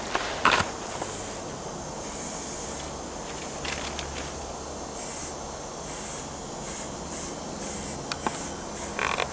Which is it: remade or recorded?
recorded